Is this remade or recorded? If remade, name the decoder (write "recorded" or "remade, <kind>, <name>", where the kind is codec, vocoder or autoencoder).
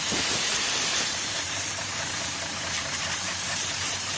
remade, vocoder, BigVGAN v2